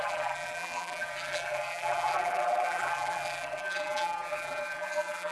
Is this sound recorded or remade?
remade